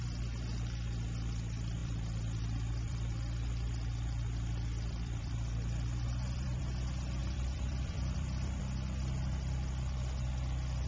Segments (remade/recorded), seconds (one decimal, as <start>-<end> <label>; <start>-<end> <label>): 0.0-1.8 recorded; 1.8-6.6 remade; 6.6-7.2 recorded; 7.2-8.6 remade; 8.6-10.9 recorded

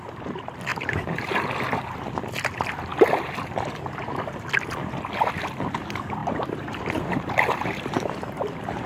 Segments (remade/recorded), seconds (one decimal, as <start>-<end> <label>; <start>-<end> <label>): 0.0-0.7 recorded; 0.7-1.3 remade; 1.3-6.2 recorded; 6.2-8.9 remade